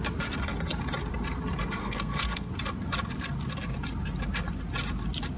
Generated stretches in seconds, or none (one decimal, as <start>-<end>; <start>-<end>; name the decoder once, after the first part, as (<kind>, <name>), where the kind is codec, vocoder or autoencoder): 1.8-2.5 (codec, SNAC)